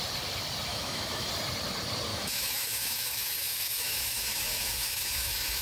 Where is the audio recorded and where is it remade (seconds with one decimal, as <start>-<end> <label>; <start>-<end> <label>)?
0.0-0.7 recorded; 0.7-1.3 remade; 1.3-2.1 recorded; 2.1-5.6 remade